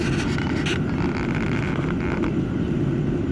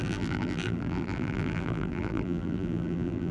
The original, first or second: first